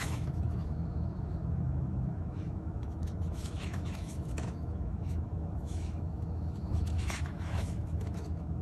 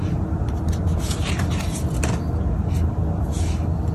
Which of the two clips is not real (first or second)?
first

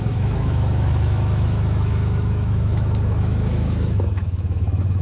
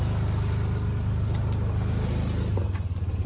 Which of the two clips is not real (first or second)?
first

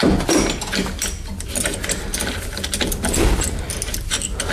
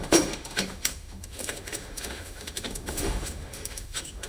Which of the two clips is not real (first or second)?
second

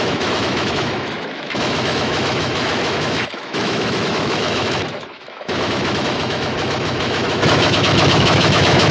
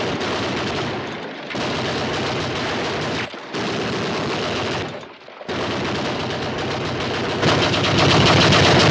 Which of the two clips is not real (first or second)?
first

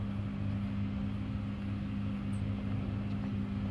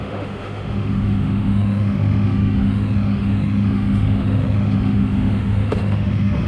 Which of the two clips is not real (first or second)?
second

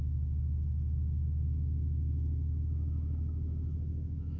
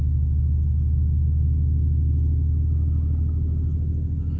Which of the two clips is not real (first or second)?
first